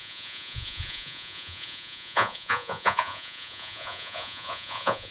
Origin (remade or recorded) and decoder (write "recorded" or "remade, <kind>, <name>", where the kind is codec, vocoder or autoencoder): remade, vocoder, Vocos